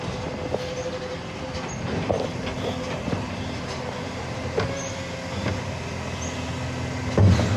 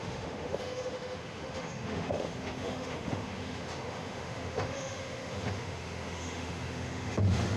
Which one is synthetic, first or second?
second